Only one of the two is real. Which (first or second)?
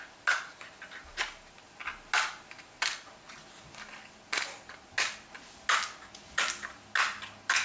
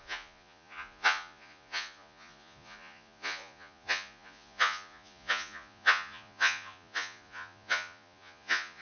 first